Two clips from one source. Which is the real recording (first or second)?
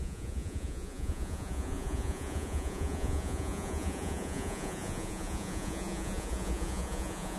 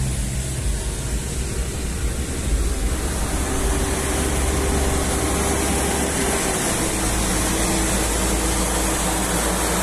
second